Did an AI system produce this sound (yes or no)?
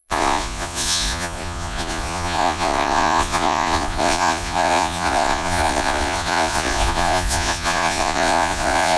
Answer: yes